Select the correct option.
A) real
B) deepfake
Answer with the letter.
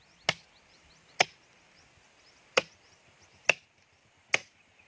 A